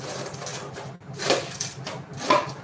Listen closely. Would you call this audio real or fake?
real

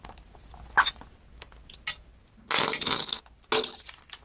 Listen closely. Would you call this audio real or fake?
real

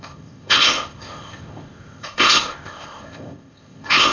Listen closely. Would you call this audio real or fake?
fake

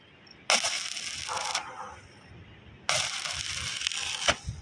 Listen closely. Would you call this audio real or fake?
real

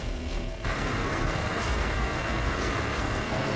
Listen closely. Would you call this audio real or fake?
fake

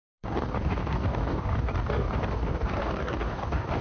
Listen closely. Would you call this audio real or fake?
fake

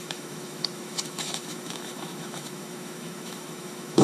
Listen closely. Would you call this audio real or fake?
fake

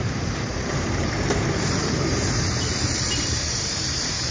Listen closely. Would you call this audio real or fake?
fake